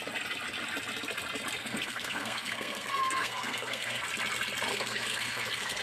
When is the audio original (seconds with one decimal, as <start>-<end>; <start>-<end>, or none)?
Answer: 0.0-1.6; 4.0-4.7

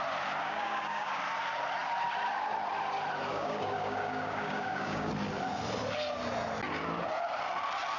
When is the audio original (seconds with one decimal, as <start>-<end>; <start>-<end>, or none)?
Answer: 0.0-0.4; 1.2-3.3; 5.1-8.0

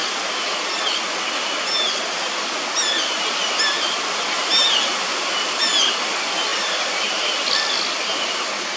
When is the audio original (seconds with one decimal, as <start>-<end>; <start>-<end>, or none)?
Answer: 0.0-8.8

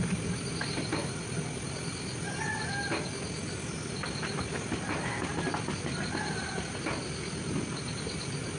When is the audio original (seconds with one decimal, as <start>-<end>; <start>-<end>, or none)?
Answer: 0.0-8.6